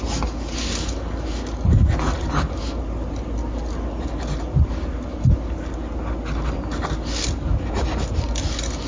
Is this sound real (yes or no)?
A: yes